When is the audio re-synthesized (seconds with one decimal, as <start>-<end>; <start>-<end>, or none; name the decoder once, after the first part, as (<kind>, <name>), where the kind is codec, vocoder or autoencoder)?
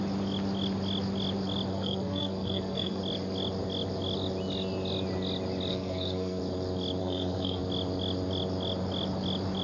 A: 1.7-3.0 (codec, SNAC); 5.7-6.4; 7.0-7.6